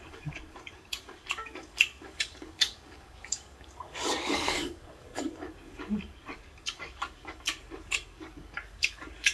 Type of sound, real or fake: fake